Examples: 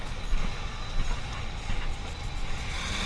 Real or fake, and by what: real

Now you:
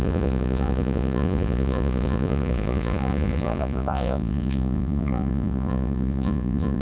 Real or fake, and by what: fake, vocoder, Vocos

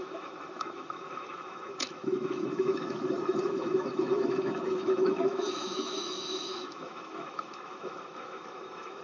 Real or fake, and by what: fake, autoencoder, DAC-VAE